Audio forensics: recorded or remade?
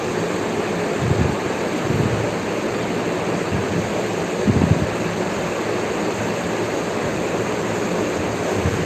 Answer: recorded